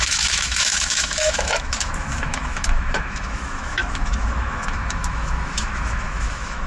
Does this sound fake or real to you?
fake